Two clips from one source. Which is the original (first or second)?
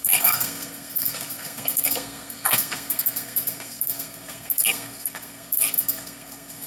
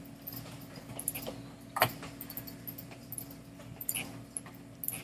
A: second